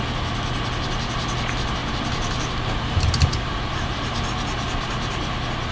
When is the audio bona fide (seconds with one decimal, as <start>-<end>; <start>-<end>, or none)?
0.0-1.8; 4.1-5.7